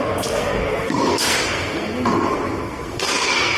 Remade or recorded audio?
remade